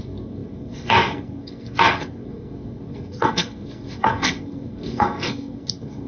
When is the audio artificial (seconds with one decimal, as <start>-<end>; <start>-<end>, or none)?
0.0-6.1